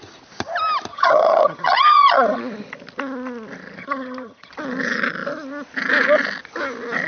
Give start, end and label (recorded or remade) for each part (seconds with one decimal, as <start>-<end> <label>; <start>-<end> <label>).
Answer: 0.0-0.9 recorded; 0.9-2.4 remade; 2.4-3.8 recorded; 3.8-4.5 remade; 4.5-7.1 recorded